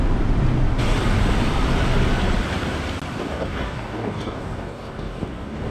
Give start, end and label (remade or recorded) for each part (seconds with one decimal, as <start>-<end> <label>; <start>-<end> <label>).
0.0-3.2 recorded; 3.2-5.7 remade